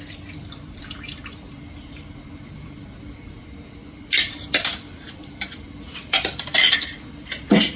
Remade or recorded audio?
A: remade